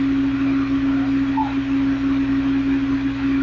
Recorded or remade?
recorded